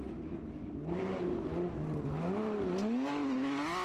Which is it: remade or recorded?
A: recorded